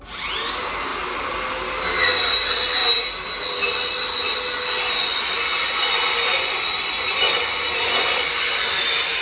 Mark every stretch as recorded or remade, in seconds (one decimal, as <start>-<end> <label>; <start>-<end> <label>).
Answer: 0.0-5.0 recorded; 5.0-8.7 remade; 8.7-9.2 recorded

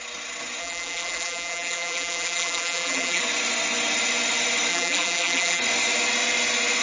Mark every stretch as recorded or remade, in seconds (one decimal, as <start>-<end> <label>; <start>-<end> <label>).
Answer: 0.0-0.6 recorded; 0.6-3.2 remade; 3.2-4.7 recorded; 4.7-5.6 remade; 5.6-6.8 recorded

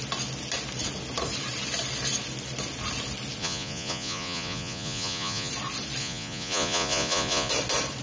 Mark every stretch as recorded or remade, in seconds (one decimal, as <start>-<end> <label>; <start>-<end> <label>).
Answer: 0.0-3.4 recorded; 3.4-5.5 remade; 5.5-6.0 recorded; 6.0-7.5 remade; 7.5-8.0 recorded

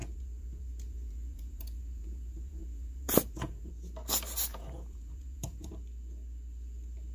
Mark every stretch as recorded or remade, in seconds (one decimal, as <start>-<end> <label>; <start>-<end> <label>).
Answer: 0.0-3.7 remade; 3.7-4.5 recorded; 4.5-5.7 remade; 5.7-7.1 recorded